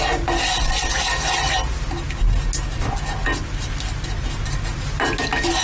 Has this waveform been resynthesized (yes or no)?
no